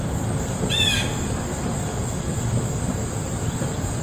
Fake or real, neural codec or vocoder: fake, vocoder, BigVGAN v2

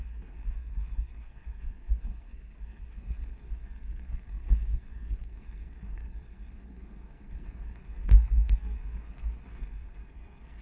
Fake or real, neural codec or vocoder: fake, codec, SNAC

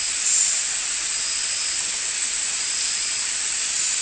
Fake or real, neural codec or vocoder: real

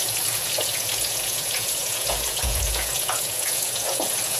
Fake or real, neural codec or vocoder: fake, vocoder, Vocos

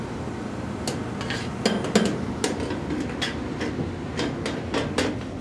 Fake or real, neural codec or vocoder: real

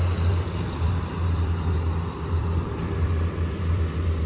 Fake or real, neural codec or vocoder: fake, vocoder, BigVGAN v2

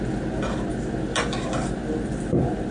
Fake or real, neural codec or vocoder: real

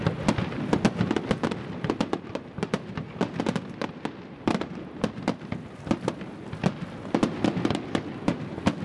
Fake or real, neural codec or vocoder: real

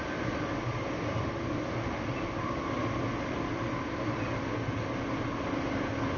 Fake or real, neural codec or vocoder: real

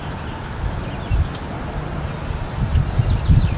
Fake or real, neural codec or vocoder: real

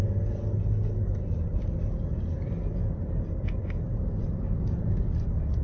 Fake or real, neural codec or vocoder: real